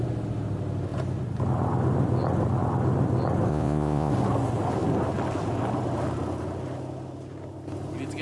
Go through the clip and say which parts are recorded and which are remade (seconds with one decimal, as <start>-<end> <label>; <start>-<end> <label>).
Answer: 0.0-3.5 recorded; 3.5-4.1 remade; 4.1-8.2 recorded